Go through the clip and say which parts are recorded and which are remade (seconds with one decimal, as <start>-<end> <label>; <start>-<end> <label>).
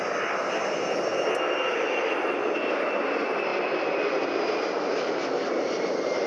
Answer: 0.0-6.3 recorded